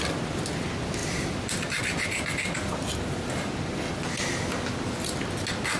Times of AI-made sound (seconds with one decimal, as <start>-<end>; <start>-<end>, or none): none